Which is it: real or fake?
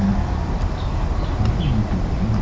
real